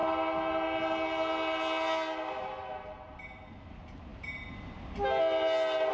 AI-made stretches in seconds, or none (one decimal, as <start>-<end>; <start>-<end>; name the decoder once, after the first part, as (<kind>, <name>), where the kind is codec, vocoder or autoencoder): none